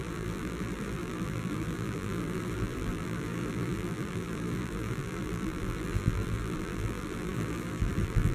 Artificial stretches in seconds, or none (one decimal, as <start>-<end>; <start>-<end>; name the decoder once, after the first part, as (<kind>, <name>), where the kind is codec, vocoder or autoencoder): 0.0-8.3 (vocoder, BigVGAN v2)